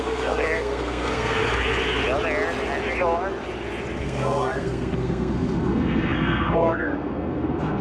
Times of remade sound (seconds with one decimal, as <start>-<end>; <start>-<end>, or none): 0.0-1.4; 4.0-7.8